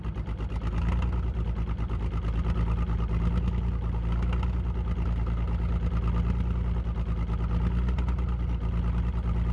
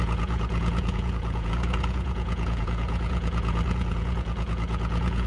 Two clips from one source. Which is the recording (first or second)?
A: first